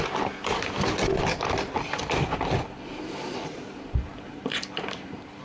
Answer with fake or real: real